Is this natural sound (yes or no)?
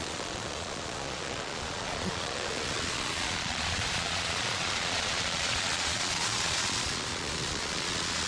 no